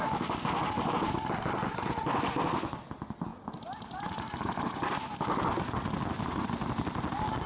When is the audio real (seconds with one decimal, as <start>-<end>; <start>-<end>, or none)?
0.0-7.5